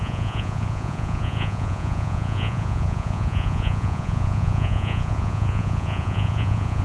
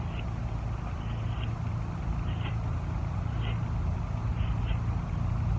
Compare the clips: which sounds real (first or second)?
second